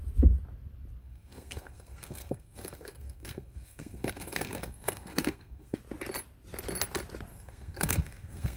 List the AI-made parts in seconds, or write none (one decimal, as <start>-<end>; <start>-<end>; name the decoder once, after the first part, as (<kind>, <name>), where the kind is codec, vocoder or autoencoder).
1.0-5.8 (codec, SNAC); 7.3-8.6